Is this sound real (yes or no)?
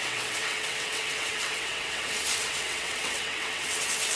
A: no